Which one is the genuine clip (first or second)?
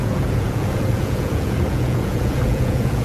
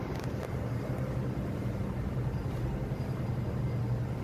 second